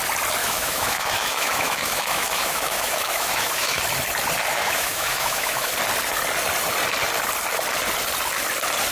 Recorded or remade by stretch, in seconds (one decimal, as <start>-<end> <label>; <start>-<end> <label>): 0.0-0.4 recorded; 0.4-3.8 remade; 3.8-4.5 recorded; 4.5-5.7 remade; 5.7-8.9 recorded